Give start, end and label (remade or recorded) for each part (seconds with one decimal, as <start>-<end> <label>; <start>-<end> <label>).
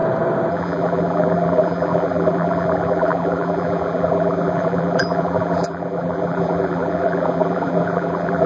0.0-0.5 recorded; 0.5-8.5 remade